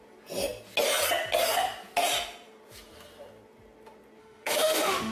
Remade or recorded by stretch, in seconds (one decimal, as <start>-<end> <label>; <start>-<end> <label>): 0.0-4.2 recorded; 4.2-5.1 remade

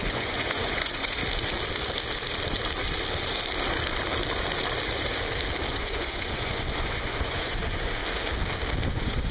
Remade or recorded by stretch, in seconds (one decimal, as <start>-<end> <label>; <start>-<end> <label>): 0.0-1.2 remade; 1.2-5.7 recorded; 5.7-8.0 remade; 8.0-8.9 recorded; 8.9-9.3 remade

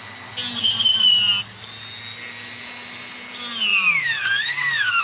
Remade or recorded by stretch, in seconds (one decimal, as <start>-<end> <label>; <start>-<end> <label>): 0.0-3.7 recorded; 3.7-5.0 remade

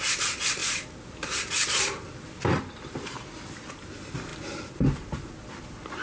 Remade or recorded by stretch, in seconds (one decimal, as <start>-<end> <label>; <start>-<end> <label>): 0.0-0.6 recorded; 0.6-2.6 remade; 2.6-4.3 recorded; 4.3-5.3 remade; 5.3-6.0 recorded

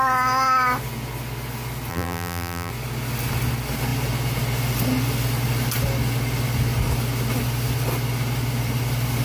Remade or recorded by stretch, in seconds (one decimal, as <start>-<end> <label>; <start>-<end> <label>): 0.0-1.9 recorded; 1.9-2.7 remade; 2.7-9.2 recorded

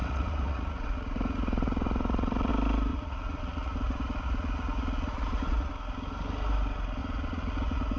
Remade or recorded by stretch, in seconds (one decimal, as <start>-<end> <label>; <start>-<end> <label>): 0.0-2.5 remade; 2.5-2.9 recorded; 2.9-5.7 remade; 5.7-7.0 recorded; 7.0-8.0 remade